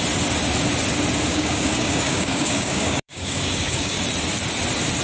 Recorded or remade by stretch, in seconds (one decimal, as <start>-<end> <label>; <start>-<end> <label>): 0.0-1.3 recorded; 1.3-4.0 remade; 4.0-5.0 recorded